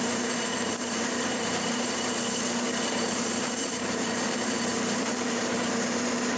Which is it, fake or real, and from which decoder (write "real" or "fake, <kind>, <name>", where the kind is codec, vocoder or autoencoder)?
fake, vocoder, BigVGAN v2